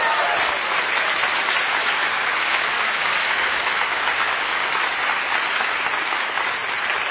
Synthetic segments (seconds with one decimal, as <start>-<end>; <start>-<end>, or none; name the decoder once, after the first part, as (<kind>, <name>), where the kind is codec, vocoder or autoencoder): 1.8-4.7 (codec, DAC)